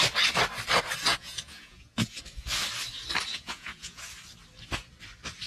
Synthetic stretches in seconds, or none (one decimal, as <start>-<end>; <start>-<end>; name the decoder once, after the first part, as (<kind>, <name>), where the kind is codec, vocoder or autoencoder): 1.1-2.2 (vocoder, Vocos); 3.3-4.0